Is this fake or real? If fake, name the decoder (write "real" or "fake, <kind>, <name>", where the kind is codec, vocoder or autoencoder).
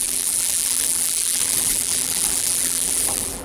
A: fake, vocoder, BigVGAN v2